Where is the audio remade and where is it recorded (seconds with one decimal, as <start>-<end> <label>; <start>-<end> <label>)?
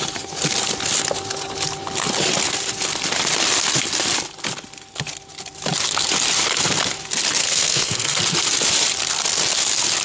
0.0-7.4 recorded; 7.4-8.2 remade; 8.2-10.0 recorded